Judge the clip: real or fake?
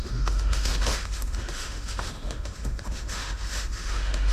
fake